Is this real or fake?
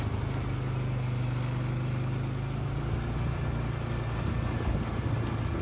real